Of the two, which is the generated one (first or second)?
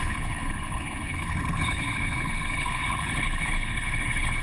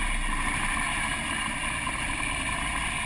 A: first